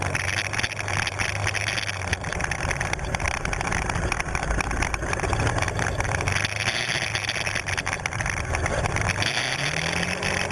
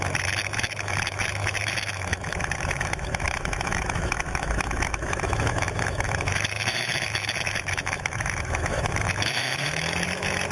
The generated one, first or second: second